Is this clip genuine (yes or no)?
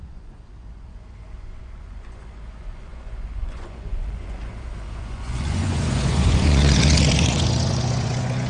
no